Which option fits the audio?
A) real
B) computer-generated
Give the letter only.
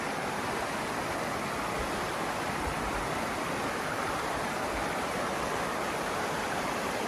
A